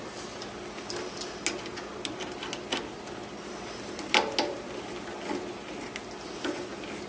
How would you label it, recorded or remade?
recorded